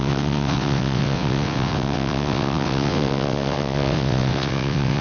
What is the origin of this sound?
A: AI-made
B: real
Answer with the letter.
A